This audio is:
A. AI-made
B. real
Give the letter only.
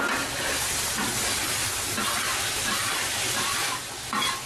B